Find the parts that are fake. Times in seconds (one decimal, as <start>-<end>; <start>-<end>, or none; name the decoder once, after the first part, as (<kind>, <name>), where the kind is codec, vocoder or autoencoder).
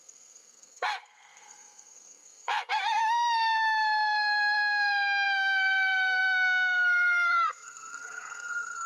0.0-8.9 (codec, SNAC)